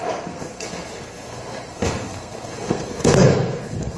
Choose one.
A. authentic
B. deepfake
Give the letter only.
B